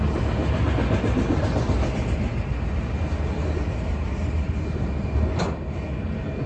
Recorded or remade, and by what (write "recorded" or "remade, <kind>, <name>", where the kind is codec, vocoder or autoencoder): recorded